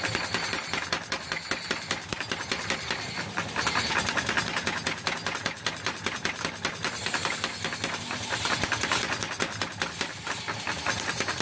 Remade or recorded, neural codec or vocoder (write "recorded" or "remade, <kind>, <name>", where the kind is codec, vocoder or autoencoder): remade, vocoder, BigVGAN v2